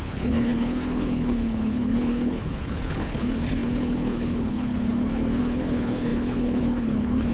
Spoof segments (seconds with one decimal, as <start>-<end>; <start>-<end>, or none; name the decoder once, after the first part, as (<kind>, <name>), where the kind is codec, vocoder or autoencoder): 0.0-7.3 (codec, HILCodec)